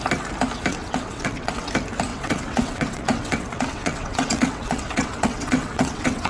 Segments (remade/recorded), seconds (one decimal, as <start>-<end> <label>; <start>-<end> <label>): 0.0-0.7 recorded; 0.7-1.7 remade; 1.7-2.1 recorded; 2.1-6.3 remade